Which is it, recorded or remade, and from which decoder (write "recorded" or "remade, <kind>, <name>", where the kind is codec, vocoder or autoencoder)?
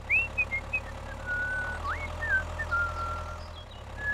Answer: recorded